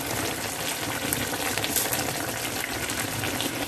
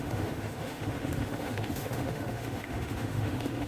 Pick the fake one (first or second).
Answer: second